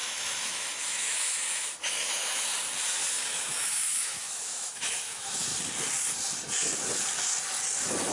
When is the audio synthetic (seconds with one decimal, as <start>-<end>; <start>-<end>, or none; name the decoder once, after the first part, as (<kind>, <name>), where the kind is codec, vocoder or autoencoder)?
0.0-2.5 (autoencoder, DAC-VAE); 3.1-5.5